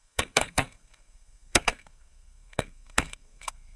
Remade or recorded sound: remade